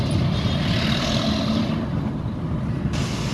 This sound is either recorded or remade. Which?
recorded